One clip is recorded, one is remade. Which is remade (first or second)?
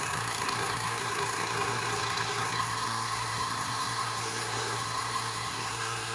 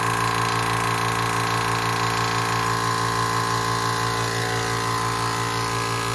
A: first